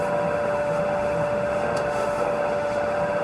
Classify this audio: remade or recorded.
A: remade